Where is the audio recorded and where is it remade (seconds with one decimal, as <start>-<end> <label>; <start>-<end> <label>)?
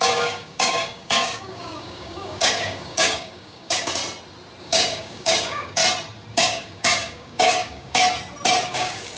0.0-4.0 remade; 4.0-4.6 recorded; 4.6-5.8 remade; 5.8-6.3 recorded; 6.3-8.0 remade; 8.0-8.6 recorded; 8.6-9.2 remade